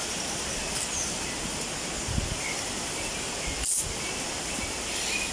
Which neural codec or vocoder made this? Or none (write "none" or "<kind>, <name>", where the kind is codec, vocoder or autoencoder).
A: none